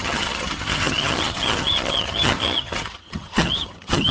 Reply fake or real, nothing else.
fake